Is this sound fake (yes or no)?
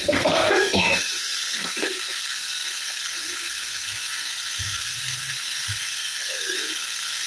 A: yes